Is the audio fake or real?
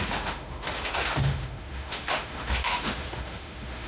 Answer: fake